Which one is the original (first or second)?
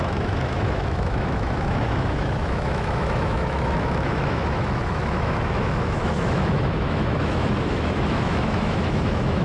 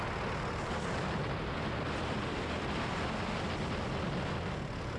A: second